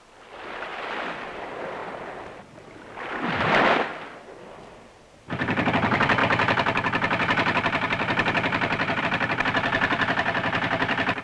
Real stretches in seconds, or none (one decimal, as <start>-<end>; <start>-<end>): none